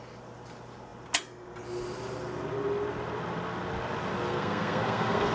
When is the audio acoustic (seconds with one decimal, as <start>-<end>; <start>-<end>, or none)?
0.0-4.3